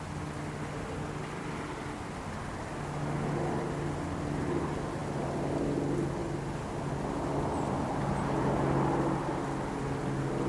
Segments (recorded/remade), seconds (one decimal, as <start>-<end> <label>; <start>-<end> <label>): 0.0-10.5 recorded